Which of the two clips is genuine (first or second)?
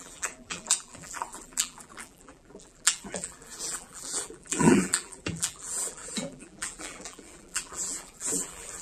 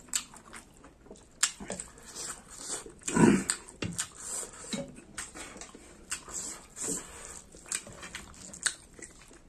second